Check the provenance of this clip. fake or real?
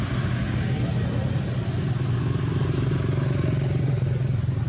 real